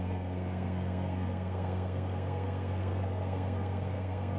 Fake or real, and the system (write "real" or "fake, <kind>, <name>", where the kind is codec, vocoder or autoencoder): fake, codec, SNAC